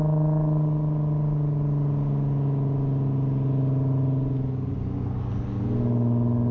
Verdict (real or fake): real